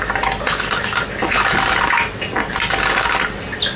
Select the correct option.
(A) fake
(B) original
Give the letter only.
B